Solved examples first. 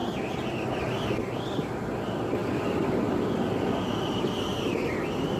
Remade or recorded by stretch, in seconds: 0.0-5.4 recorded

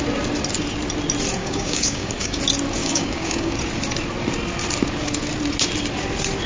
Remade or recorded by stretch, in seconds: 0.0-1.4 recorded; 1.4-2.4 remade; 2.4-2.8 recorded; 2.8-3.5 remade; 3.5-6.5 recorded

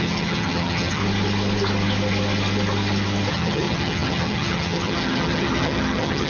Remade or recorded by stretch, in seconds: 0.0-1.0 remade; 1.0-3.3 recorded; 3.3-6.3 remade

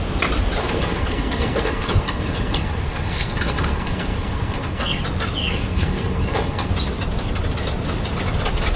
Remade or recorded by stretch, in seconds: 0.0-0.6 recorded; 0.6-5.0 remade; 5.0-5.4 recorded; 5.4-6.7 remade; 6.7-8.8 recorded

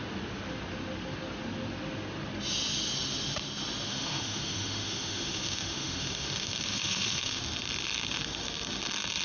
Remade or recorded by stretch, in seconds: 0.0-3.9 recorded; 3.9-7.4 remade; 7.4-9.2 recorded

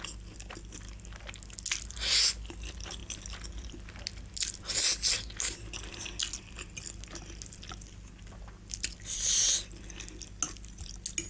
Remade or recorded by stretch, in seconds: 0.0-11.3 recorded